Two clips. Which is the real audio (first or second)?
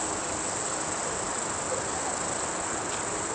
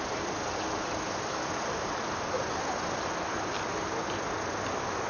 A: second